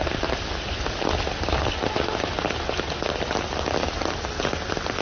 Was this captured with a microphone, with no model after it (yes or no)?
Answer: yes